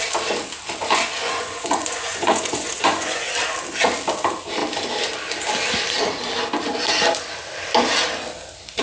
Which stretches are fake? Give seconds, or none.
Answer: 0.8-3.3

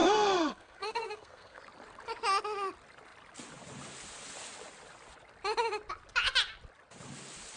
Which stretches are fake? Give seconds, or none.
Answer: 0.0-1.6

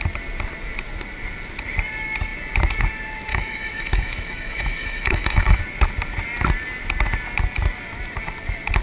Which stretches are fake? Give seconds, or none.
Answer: 3.3-5.6